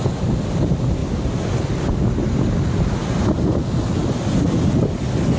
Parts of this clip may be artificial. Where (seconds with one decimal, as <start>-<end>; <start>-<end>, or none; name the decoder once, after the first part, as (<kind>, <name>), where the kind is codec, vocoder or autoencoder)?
none